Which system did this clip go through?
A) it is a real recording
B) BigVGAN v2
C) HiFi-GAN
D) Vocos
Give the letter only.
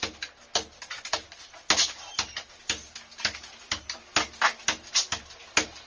A